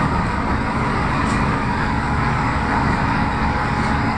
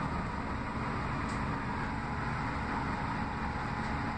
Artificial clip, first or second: first